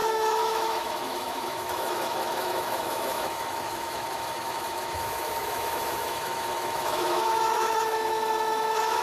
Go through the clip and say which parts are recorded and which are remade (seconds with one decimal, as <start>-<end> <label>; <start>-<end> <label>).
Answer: 0.0-9.0 remade